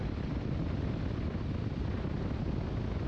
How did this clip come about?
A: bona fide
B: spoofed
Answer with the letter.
A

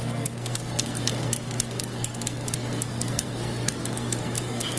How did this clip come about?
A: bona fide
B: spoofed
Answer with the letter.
B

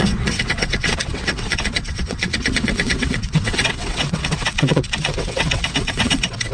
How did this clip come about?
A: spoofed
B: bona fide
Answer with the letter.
A